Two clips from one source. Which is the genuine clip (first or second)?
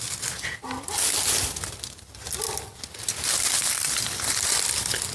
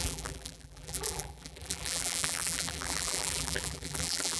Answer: first